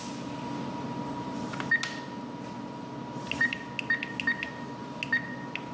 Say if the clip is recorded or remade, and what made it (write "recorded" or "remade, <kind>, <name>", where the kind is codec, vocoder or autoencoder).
recorded